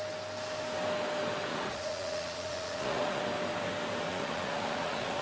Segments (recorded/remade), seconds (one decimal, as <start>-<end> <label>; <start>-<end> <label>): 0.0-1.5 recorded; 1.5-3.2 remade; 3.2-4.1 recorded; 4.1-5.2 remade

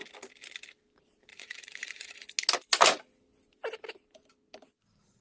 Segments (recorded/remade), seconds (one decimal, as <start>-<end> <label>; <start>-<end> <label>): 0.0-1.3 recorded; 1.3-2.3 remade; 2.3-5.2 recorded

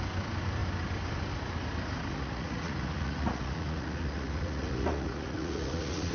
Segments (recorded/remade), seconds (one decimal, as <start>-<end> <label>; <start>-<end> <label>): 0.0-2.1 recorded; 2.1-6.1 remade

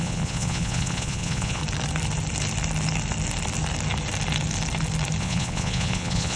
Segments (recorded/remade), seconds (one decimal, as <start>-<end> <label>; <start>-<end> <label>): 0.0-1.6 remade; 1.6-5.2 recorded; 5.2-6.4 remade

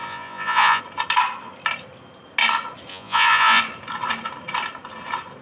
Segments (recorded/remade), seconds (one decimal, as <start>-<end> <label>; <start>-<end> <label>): 0.0-0.8 remade; 0.8-2.9 recorded; 2.9-3.6 remade; 3.6-5.4 recorded

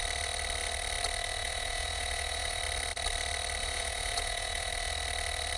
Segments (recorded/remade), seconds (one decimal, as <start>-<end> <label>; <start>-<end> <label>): 0.0-1.4 recorded; 1.4-2.6 remade; 2.6-3.6 recorded; 3.6-4.7 remade; 4.7-5.6 recorded